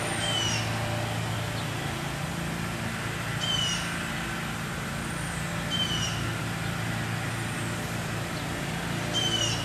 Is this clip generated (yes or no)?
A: no